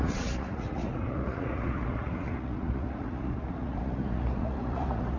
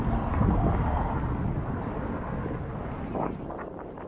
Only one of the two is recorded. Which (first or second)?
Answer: second